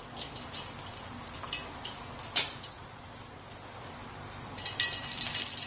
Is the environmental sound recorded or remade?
recorded